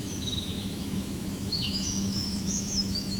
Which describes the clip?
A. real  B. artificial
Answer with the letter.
B